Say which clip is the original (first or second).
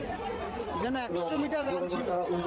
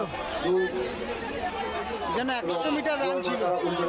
second